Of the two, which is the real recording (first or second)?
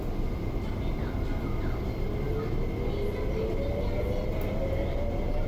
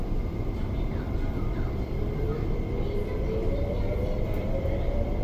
first